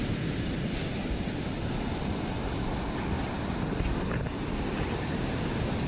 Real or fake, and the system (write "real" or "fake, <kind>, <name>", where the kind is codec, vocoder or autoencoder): real